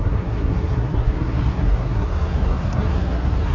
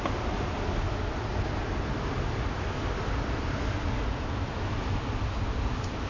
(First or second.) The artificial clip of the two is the first